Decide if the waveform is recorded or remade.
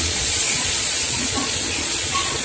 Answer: remade